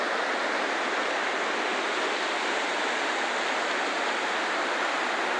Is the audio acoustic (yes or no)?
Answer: yes